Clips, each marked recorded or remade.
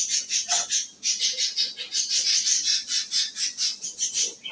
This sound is recorded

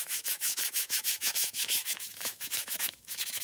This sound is remade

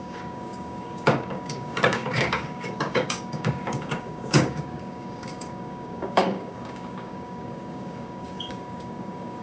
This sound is remade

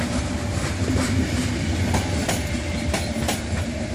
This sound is remade